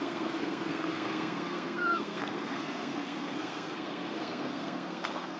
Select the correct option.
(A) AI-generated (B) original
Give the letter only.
A